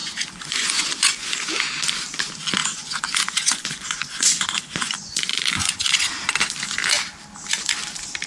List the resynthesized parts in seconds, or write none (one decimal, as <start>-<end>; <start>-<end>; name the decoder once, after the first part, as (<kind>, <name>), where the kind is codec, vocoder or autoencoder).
0.0-1.5 (vocoder, Vocos); 2.6-6.1